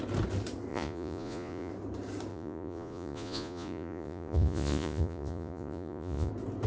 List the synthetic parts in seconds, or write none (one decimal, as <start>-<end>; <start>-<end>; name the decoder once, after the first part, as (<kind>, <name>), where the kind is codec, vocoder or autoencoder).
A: 0.7-1.7 (vocoder, Vocos); 2.3-6.3